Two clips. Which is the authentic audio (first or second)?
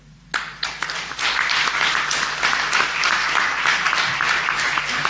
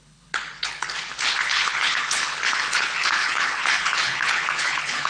first